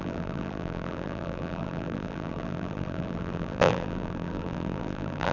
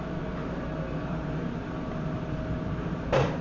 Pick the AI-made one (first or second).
first